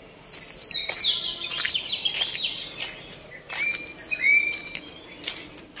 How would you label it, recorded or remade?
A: recorded